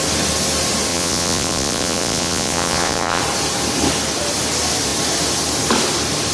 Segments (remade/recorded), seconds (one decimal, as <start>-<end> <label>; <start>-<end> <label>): 0.0-0.9 recorded; 0.9-3.2 remade; 3.2-6.3 recorded